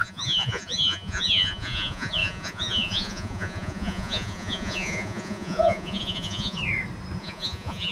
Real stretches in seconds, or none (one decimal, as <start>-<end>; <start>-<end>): 6.6-7.2